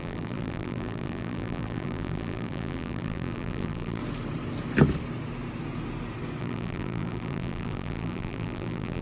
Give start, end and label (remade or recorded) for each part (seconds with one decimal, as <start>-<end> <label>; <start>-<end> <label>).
0.0-4.0 remade; 4.0-6.4 recorded; 6.4-9.0 remade